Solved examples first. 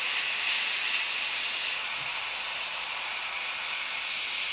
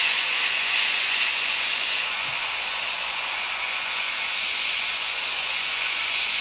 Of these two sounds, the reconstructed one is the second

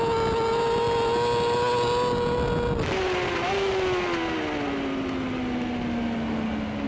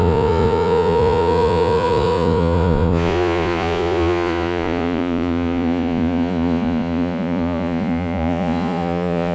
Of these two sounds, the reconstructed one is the second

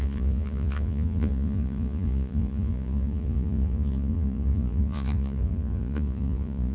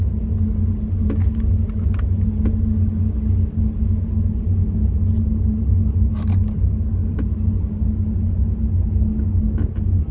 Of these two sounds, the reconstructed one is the first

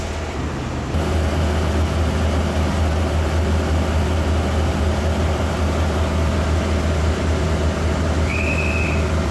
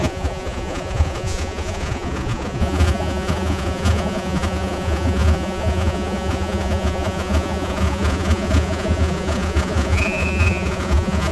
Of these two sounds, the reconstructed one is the second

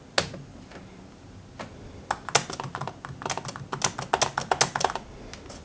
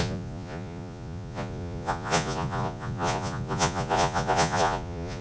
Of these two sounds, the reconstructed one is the second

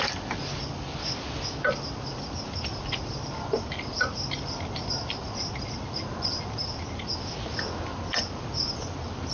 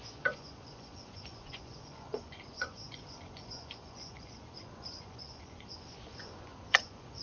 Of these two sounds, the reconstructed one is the second